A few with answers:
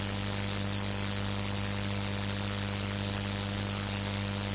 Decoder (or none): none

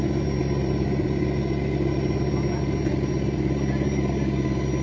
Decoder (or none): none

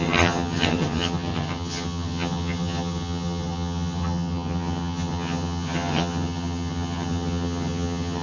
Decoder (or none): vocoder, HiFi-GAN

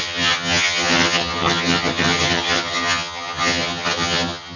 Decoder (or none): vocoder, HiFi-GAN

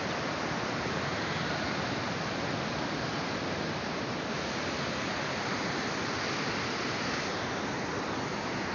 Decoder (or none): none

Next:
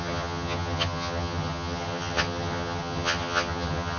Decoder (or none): vocoder, HiFi-GAN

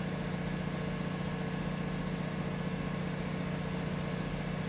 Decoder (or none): none